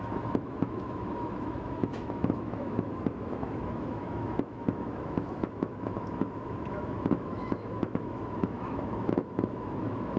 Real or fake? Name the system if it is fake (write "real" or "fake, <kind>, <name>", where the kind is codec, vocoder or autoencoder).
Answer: fake, autoencoder, DAC-VAE